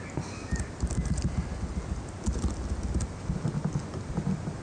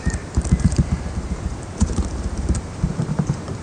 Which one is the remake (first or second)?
second